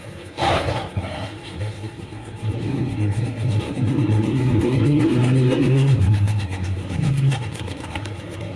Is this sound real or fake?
fake